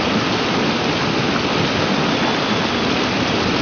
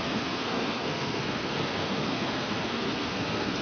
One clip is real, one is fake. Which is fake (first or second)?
second